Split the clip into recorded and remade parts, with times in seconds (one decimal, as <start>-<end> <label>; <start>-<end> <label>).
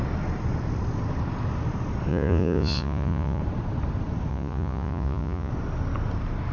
0.0-2.1 recorded; 2.1-3.4 remade; 3.4-4.3 recorded; 4.3-5.5 remade; 5.5-6.5 recorded